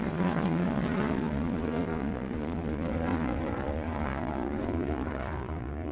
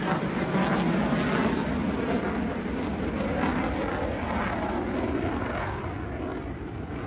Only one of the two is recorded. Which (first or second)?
second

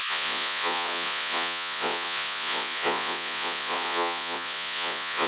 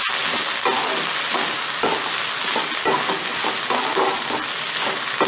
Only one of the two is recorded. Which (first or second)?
second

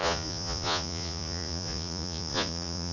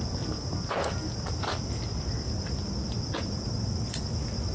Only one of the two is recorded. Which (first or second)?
second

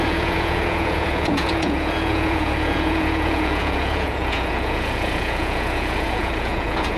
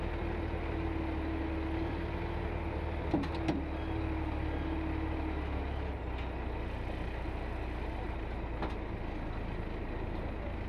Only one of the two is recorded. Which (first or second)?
second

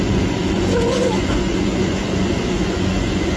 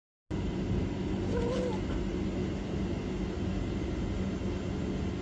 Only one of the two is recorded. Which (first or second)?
second